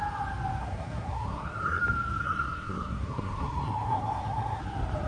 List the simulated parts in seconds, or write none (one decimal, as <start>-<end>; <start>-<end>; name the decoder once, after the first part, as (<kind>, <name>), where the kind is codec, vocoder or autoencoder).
0.6-1.8 (codec, SNAC); 2.2-4.6